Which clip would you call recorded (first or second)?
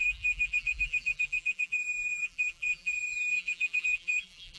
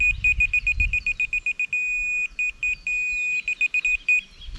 second